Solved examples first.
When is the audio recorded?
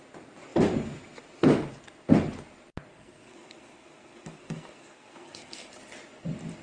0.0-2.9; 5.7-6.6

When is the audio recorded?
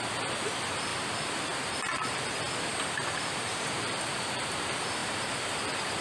0.0-0.9; 4.5-5.0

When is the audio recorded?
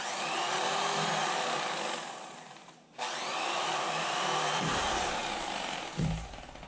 0.0-1.2; 5.2-6.7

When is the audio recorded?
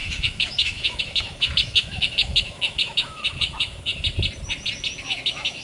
3.9-5.0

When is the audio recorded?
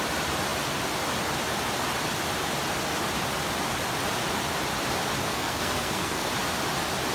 0.0-5.2; 6.3-7.1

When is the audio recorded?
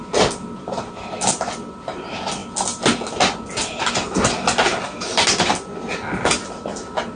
0.0-7.2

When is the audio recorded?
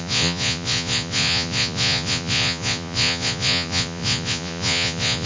none